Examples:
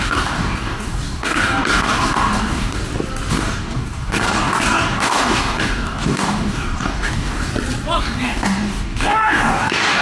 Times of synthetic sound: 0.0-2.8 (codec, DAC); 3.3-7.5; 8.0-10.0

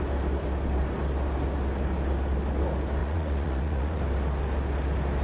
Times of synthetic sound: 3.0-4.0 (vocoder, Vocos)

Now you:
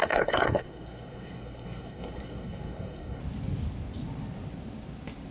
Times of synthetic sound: 0.0-3.2 (codec, SNAC)

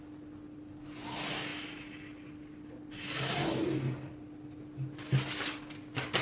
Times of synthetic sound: none